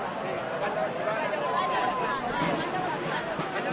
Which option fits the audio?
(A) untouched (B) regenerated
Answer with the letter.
A